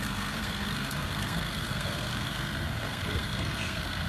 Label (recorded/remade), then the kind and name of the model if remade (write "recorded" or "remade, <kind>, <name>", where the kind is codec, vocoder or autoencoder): remade, codec, SNAC